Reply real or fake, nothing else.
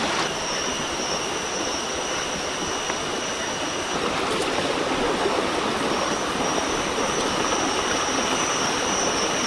real